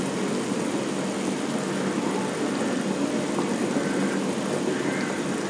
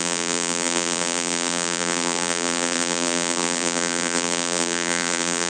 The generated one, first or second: second